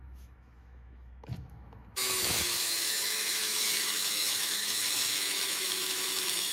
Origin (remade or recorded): remade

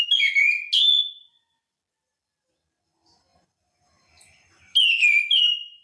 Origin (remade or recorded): recorded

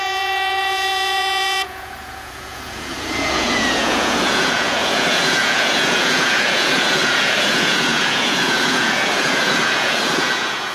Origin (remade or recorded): remade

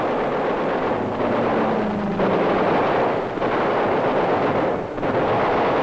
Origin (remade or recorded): recorded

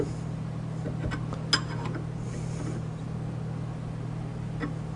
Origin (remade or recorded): recorded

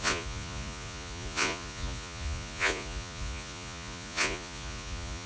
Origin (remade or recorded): remade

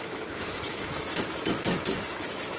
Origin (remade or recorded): remade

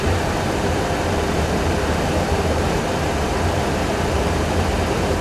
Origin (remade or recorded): remade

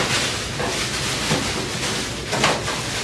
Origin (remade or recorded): recorded